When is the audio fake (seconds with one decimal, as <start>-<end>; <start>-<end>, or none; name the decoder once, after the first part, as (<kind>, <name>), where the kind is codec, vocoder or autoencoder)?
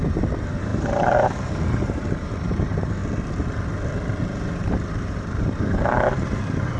0.0-3.0 (vocoder, BigVGAN v2); 4.9-6.8